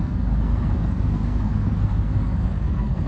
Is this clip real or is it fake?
fake